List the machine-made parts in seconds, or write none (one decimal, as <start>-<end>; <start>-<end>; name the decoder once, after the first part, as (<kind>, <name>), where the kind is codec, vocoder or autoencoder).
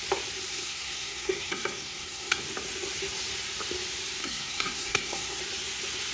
0.5-2.4 (codec, SNAC); 4.2-5.4